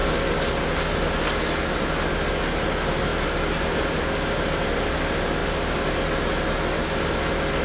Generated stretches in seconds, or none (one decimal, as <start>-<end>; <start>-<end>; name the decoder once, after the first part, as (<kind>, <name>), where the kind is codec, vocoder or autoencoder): none